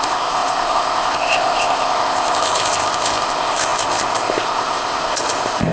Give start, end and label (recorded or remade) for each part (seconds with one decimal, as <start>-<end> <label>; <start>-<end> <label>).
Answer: 0.0-5.7 remade